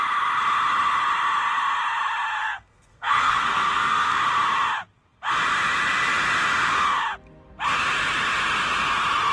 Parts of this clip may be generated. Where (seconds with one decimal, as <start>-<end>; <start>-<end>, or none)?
2.4-4.2